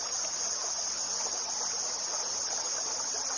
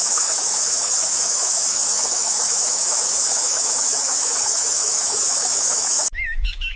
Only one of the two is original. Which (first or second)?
first